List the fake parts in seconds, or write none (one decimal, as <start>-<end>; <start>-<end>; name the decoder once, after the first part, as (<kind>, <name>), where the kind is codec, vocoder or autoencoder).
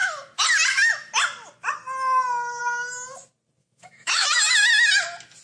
3.6-4.5 (autoencoder, DAC-VAE)